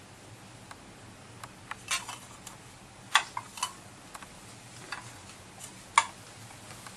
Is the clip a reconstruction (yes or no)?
no